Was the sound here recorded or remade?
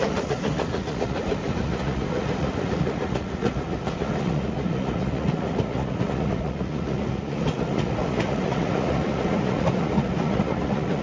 remade